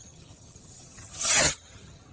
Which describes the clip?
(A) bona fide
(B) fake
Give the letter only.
B